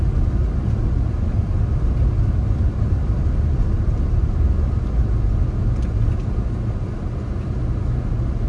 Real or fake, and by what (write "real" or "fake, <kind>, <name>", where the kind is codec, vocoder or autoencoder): real